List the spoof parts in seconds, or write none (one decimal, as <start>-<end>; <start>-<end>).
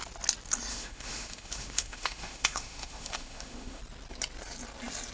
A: 0.7-3.8